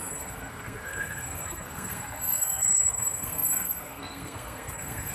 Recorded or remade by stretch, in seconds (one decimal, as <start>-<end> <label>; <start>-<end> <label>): 0.0-5.1 remade